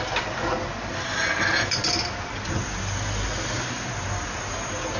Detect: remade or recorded recorded